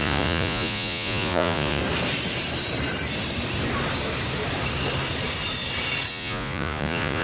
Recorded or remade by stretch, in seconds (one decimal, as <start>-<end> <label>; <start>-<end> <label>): 0.0-1.8 remade; 1.8-6.1 recorded; 6.1-7.2 remade